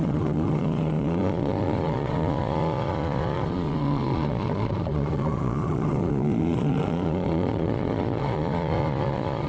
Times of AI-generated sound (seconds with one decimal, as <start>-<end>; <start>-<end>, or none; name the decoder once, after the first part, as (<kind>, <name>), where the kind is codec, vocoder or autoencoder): 0.0-9.5 (vocoder, Vocos)